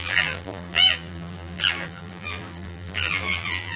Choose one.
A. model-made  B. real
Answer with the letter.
A